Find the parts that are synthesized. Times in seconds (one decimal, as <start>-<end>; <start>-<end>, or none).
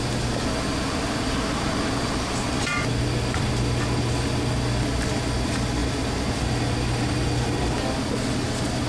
none